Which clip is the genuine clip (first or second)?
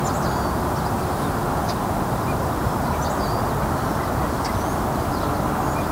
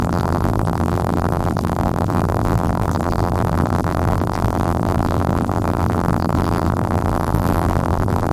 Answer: first